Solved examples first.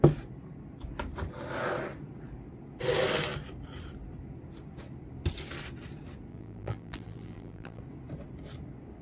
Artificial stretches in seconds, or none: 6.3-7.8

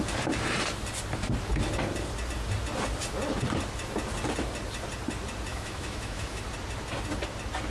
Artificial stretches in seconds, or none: 5.5-6.4